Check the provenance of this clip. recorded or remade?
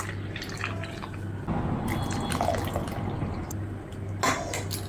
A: recorded